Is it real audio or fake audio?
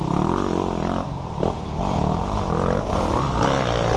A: real